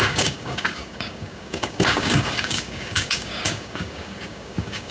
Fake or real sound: fake